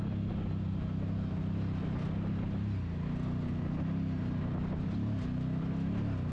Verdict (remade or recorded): recorded